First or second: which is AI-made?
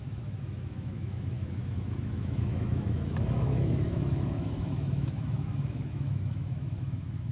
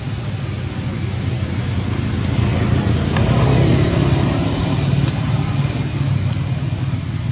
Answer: first